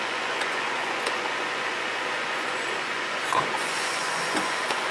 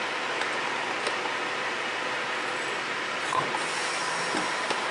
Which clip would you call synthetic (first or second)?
first